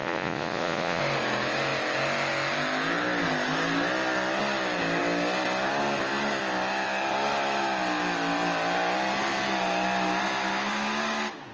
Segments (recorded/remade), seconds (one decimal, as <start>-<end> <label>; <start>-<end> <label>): 0.0-1.0 remade; 1.0-11.5 recorded